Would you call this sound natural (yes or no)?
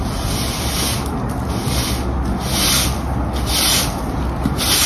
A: yes